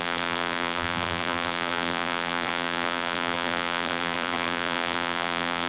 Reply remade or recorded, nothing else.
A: remade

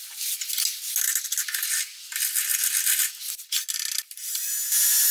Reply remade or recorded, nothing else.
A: recorded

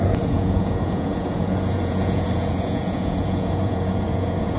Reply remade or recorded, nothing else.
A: remade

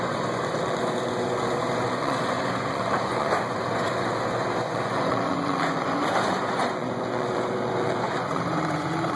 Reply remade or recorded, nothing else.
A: remade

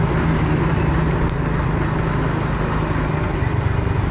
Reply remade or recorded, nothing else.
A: recorded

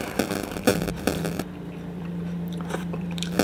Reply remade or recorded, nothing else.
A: remade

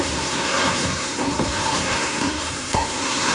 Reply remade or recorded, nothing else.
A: remade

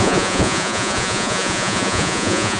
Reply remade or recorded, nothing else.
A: remade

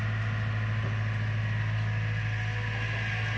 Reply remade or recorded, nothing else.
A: recorded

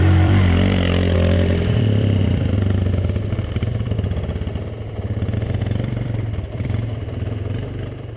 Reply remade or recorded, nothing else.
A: remade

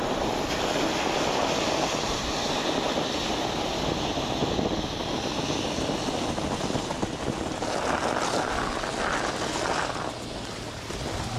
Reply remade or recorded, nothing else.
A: recorded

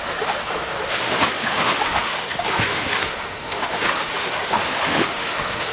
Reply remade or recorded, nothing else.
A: remade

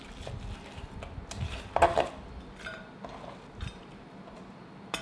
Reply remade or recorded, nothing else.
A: recorded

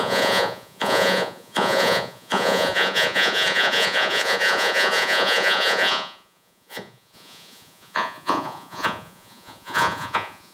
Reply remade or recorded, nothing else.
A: remade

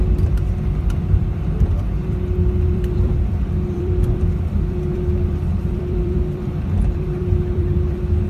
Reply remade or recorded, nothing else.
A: remade